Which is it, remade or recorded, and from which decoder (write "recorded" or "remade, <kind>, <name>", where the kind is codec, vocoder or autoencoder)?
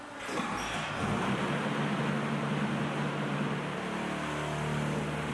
recorded